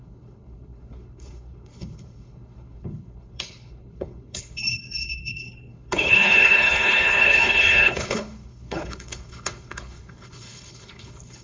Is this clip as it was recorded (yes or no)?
no